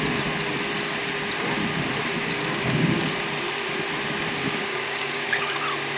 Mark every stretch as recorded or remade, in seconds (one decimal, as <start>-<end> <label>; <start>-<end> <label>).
0.0-2.2 recorded; 2.2-3.1 remade; 3.1-4.4 recorded; 4.4-5.6 remade; 5.6-6.0 recorded